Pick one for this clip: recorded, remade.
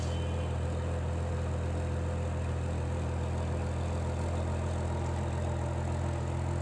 recorded